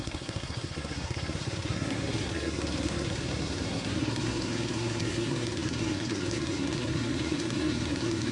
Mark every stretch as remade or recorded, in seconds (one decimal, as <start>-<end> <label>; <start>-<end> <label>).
0.0-8.3 remade